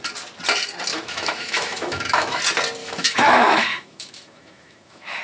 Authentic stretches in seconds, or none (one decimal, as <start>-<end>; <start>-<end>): 0.0-0.9; 2.4-2.8